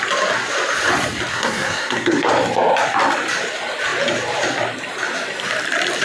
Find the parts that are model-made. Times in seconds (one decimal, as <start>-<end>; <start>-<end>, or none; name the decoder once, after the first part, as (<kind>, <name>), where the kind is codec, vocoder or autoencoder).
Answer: 1.3-2.3 (codec, SNAC)